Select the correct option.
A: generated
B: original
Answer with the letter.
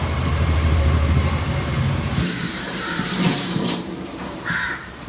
A